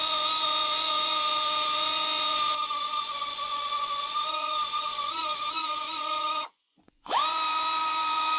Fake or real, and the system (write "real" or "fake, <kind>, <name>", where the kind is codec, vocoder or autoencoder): fake, vocoder, Vocos